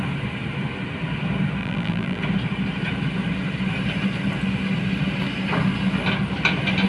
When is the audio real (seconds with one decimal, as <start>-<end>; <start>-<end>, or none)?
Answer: 0.0-1.6; 2.2-6.9